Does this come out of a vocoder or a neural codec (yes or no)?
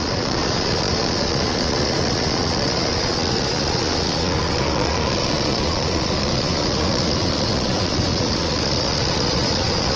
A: yes